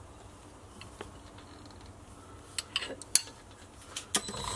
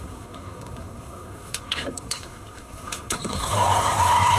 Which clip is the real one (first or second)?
first